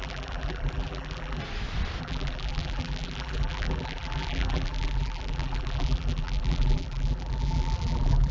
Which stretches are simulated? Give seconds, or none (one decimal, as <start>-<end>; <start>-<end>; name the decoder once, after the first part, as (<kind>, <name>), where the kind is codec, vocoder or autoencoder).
0.0-1.4 (vocoder, BigVGAN v2); 2.0-8.3